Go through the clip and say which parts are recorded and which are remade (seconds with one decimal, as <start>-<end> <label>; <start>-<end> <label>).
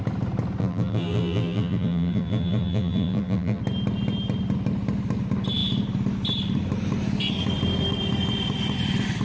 0.0-0.6 recorded; 0.6-3.6 remade; 3.6-9.2 recorded